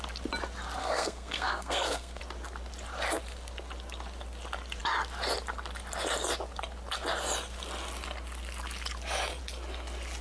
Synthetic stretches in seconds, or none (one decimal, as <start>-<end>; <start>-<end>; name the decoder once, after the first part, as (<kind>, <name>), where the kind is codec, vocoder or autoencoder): 0.8-2.2 (codec, SNAC)